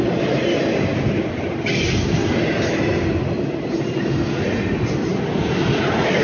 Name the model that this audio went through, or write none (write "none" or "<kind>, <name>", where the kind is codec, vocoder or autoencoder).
none